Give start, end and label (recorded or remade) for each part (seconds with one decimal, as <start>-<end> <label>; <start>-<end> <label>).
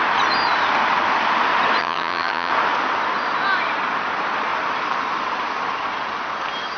0.0-1.8 recorded; 1.8-2.5 remade; 2.5-6.8 recorded